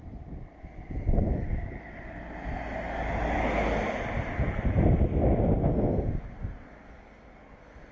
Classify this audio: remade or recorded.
recorded